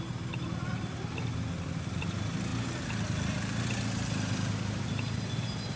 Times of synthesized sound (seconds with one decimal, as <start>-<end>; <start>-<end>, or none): none